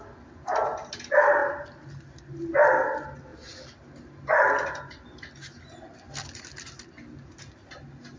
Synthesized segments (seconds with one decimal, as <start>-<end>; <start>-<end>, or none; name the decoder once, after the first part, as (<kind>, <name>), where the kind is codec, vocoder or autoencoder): none